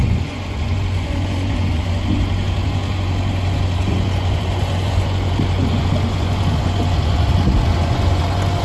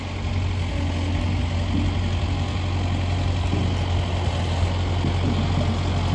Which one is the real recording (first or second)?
second